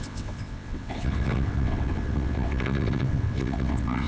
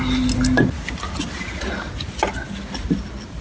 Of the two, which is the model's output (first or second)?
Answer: first